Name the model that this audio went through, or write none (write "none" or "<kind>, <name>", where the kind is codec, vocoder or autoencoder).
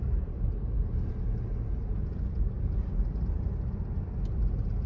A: none